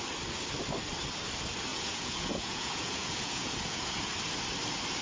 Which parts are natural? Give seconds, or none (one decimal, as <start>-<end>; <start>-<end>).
0.0-1.7; 4.1-5.0